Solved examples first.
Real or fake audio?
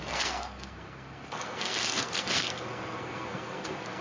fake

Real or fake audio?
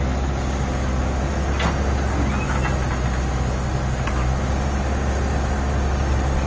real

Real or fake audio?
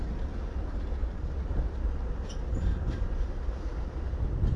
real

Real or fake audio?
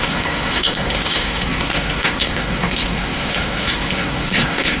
fake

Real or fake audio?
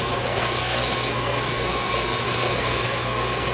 fake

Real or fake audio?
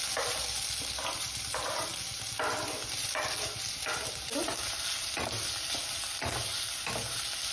real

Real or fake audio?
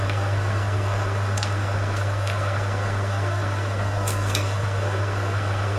fake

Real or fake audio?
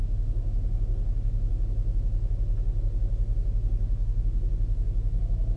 real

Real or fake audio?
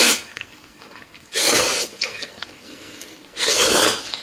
fake